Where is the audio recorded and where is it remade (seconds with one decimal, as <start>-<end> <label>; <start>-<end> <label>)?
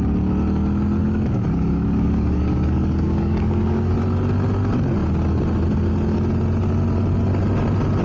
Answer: 0.0-1.0 recorded; 1.0-3.9 remade; 3.9-8.0 recorded